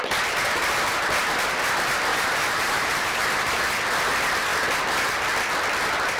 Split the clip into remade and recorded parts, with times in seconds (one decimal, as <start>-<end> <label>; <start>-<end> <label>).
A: 0.0-2.1 recorded; 2.1-3.7 remade; 3.7-6.2 recorded